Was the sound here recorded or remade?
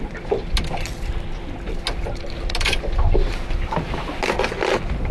recorded